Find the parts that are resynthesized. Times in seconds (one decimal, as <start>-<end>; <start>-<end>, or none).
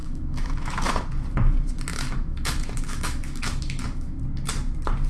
0.0-0.9; 1.9-4.2